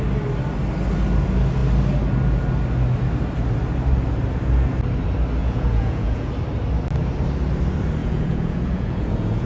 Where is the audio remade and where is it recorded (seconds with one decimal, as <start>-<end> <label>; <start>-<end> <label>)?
0.0-5.4 recorded; 5.4-6.3 remade; 6.3-8.0 recorded; 8.0-9.5 remade